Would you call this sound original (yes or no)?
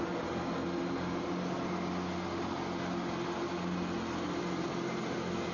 yes